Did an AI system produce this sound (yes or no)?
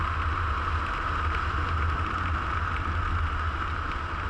no